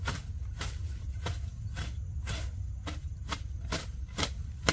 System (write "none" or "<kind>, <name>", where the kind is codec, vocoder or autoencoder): none